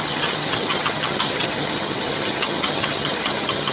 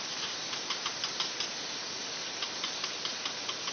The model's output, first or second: first